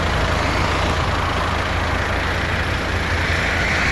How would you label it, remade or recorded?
recorded